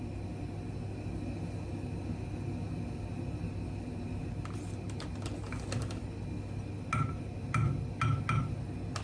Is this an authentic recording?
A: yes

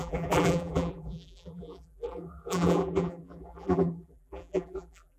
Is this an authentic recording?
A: no